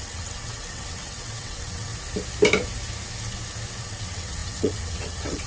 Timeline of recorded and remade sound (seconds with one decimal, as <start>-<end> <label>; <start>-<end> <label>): 0.0-1.9 remade; 1.9-3.8 recorded; 3.8-5.5 remade